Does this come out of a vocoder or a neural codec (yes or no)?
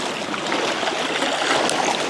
no